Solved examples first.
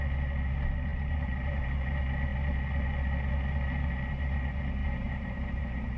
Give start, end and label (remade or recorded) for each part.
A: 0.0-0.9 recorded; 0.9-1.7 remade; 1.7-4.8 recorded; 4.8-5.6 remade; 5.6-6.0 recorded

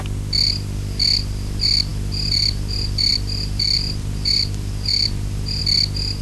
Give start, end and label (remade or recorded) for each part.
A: 0.0-1.9 recorded; 1.9-5.6 remade; 5.6-6.2 recorded

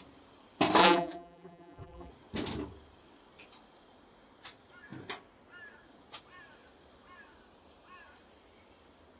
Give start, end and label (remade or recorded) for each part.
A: 0.0-0.8 recorded; 0.8-2.1 remade; 2.1-9.2 recorded

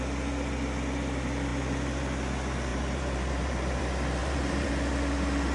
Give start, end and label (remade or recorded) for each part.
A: 0.0-2.7 recorded; 2.7-3.8 remade; 3.8-4.2 recorded; 4.2-4.7 remade; 4.7-5.5 recorded

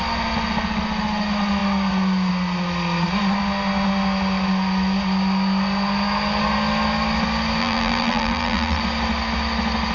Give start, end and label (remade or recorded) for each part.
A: 0.0-7.6 recorded; 7.6-8.8 remade; 8.8-9.9 recorded

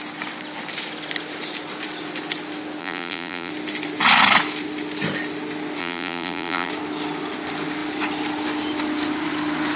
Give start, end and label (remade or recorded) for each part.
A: 0.0-2.8 recorded; 2.8-3.5 remade; 3.5-5.8 recorded; 5.8-6.7 remade; 6.7-9.8 recorded

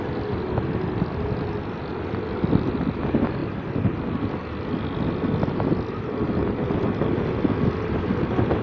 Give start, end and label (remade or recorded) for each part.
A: 0.0-1.9 recorded; 1.9-3.0 remade; 3.0-8.6 recorded

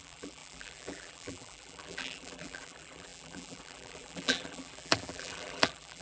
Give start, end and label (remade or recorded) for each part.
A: 0.0-6.0 remade